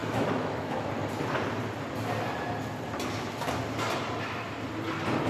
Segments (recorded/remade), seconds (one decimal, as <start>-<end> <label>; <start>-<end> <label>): 0.0-0.9 remade; 0.9-5.3 recorded